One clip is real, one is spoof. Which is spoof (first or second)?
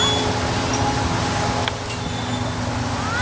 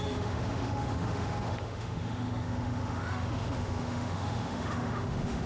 second